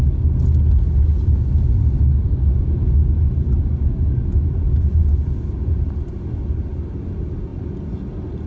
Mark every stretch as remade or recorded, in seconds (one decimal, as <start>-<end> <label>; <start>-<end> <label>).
0.0-8.5 recorded